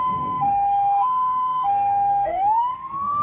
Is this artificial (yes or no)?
yes